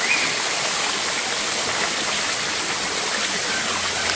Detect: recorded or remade recorded